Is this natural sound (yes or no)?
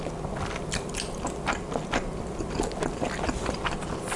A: yes